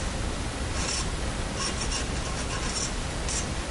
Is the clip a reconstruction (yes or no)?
no